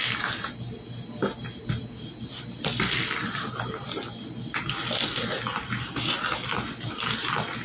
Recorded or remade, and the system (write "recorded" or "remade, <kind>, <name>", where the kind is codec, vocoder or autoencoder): recorded